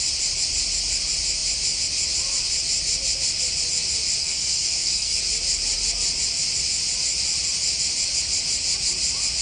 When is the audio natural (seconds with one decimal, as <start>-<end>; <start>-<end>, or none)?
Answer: 0.0-4.2; 5.2-9.4